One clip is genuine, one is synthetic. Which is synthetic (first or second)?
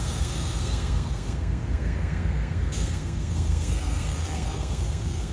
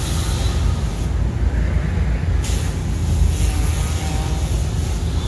first